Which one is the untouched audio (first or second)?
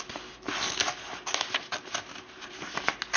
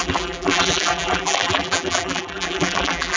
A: first